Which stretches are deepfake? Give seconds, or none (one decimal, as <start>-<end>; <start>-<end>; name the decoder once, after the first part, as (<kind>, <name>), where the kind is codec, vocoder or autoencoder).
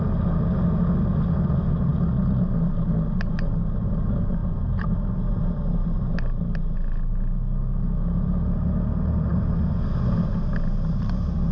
none